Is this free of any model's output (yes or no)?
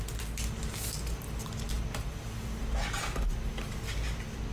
yes